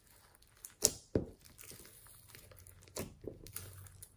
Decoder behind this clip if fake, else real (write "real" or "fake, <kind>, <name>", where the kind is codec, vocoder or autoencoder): real